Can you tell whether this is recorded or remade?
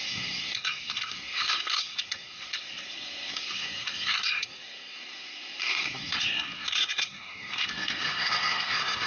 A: remade